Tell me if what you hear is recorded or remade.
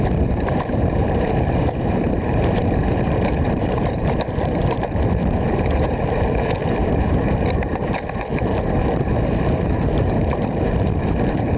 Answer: remade